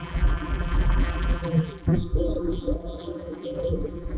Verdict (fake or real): fake